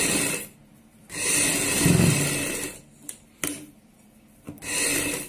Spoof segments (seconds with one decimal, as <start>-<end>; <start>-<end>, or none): none